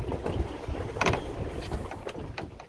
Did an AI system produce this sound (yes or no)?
no